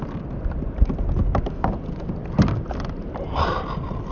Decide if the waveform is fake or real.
real